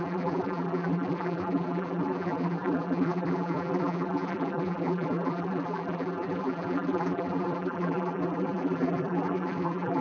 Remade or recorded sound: remade